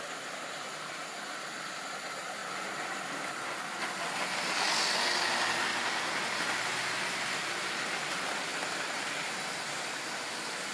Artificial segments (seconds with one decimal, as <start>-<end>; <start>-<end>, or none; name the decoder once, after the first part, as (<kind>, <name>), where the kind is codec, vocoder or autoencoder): 0.0-2.4 (vocoder, BigVGAN v2); 7.0-8.5; 9.3-10.7